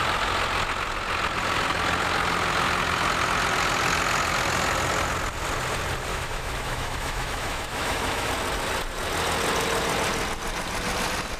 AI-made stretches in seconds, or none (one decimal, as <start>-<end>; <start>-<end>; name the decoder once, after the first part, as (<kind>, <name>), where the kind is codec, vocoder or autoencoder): 6.1-8.3 (autoencoder, DAC-VAE)